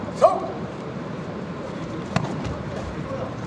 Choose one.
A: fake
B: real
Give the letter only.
A